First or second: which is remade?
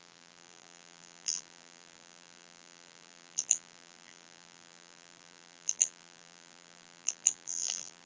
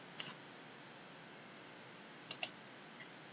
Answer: first